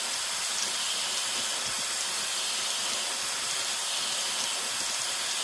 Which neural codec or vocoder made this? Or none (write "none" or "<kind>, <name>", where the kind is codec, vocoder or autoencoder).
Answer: none